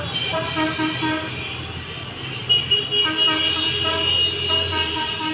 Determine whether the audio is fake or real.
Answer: real